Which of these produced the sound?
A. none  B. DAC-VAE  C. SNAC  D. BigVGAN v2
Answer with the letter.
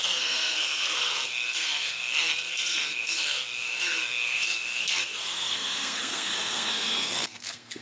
C